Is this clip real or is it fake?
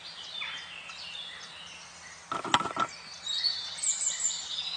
real